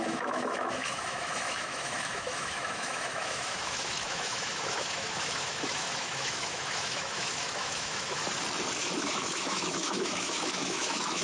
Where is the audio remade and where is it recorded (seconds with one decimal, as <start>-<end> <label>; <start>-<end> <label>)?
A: 0.0-8.2 remade; 8.2-8.8 recorded; 8.8-11.2 remade